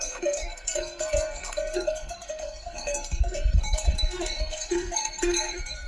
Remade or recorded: remade